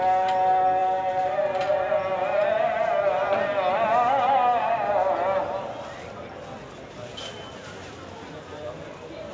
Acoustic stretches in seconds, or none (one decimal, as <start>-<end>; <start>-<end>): 0.0-9.3